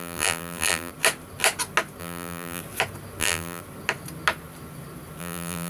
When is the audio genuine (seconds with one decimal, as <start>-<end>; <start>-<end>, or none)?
0.9-2.0; 2.6-3.2; 3.6-5.2